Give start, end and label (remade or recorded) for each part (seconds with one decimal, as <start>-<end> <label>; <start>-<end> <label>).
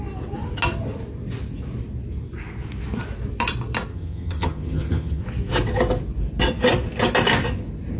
0.0-3.9 recorded; 3.9-5.2 remade; 5.2-8.0 recorded